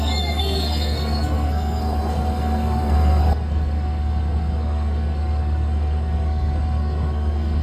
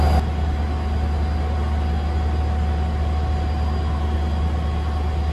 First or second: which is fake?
first